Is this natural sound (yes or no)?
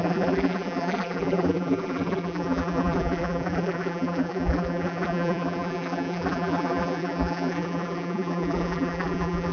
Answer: no